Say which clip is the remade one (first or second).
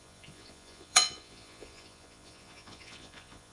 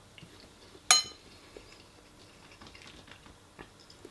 first